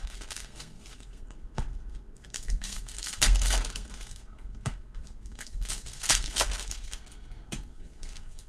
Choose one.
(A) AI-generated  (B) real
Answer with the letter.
A